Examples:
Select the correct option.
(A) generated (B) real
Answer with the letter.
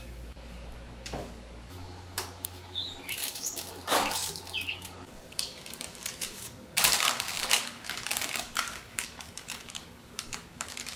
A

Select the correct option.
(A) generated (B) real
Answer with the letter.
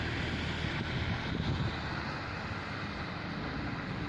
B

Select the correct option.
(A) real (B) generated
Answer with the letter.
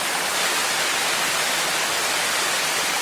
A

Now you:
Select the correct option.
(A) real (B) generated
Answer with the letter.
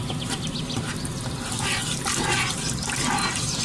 A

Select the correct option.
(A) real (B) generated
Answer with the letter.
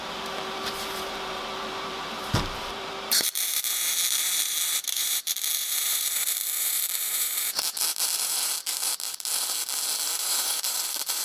B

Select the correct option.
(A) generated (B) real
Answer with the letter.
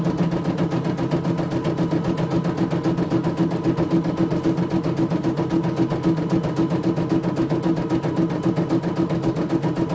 B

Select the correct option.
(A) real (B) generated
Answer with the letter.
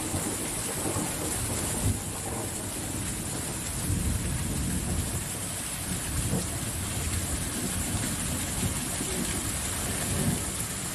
A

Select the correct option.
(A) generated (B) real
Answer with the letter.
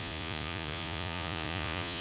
A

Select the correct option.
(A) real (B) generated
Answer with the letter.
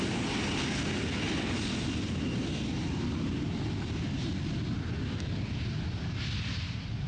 A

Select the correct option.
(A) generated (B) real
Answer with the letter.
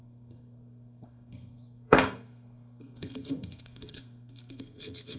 A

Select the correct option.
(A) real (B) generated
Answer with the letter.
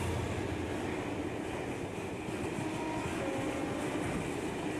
A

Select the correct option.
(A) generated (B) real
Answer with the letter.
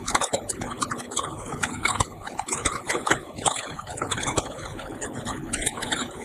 A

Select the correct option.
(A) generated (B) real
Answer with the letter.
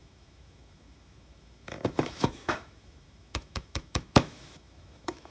A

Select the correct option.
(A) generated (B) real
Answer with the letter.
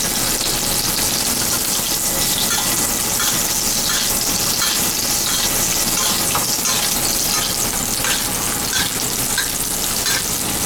B